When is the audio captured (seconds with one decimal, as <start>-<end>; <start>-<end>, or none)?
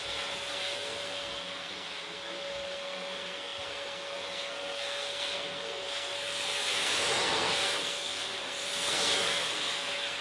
none